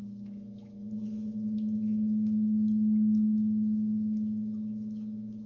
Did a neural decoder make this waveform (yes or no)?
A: yes